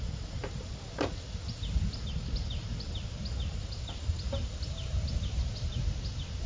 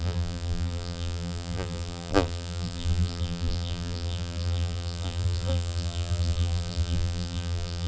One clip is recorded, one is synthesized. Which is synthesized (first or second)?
second